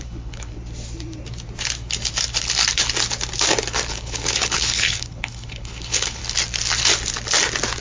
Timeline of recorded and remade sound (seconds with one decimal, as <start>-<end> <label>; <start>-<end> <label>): 0.0-0.5 remade; 0.5-3.9 recorded; 3.9-6.2 remade; 6.2-7.8 recorded